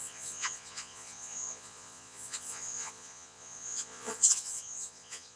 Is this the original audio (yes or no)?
no